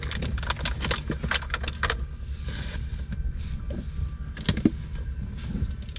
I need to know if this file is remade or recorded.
recorded